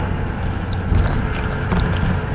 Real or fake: real